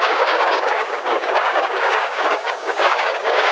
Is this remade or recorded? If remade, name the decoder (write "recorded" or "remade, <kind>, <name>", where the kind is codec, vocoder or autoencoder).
remade, codec, DAC